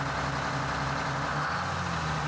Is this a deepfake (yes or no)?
no